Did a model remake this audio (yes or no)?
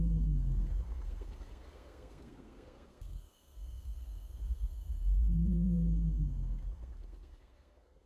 yes